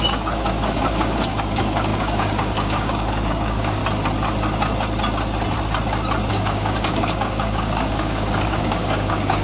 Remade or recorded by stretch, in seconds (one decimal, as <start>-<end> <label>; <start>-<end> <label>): 0.0-3.8 remade; 3.8-6.3 recorded; 6.3-9.4 remade